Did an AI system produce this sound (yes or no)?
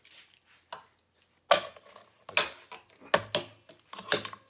no